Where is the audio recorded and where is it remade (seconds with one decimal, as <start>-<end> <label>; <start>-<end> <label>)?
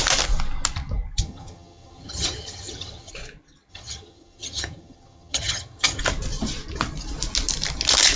0.0-1.2 recorded; 1.2-3.1 remade; 3.1-3.7 recorded; 3.7-6.0 remade; 6.0-8.2 recorded